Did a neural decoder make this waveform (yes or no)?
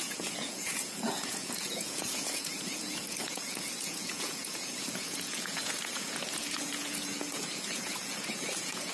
yes